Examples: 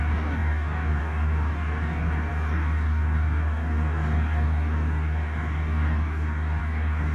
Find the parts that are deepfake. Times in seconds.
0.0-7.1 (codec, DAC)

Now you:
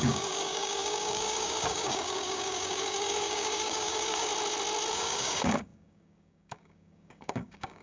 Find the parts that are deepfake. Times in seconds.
0.0-4.3 (codec, DAC); 4.9-7.8

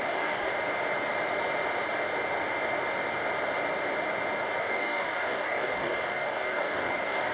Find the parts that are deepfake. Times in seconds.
0.0-0.5 (codec, DAC); 4.6-7.3